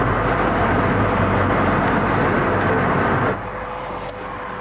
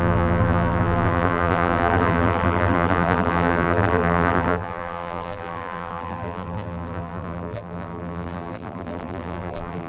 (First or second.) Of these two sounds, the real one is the first